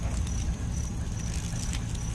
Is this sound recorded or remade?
recorded